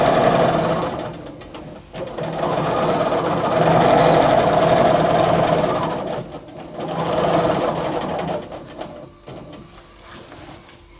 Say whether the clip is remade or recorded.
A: recorded